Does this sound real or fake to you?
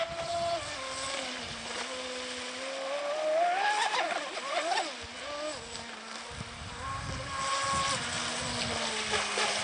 real